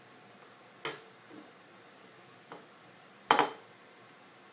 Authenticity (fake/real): real